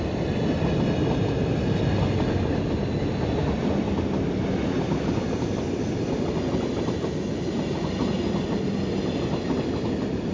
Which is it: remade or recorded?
recorded